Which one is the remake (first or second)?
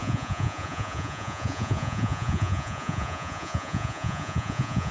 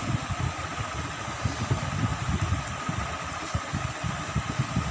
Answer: first